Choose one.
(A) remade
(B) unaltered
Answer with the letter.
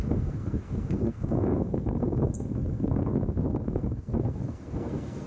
A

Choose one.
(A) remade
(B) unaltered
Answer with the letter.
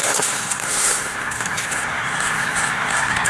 A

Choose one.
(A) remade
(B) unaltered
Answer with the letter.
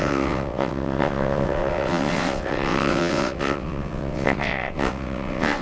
A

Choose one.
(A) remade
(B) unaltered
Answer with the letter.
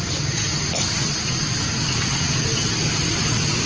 B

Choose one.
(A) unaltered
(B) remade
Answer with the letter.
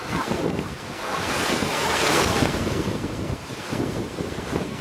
B